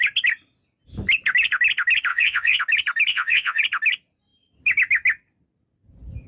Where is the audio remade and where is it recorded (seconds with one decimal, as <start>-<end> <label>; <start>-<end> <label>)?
0.0-2.1 recorded; 2.1-2.6 remade; 2.6-3.1 recorded; 3.1-3.6 remade; 3.6-6.3 recorded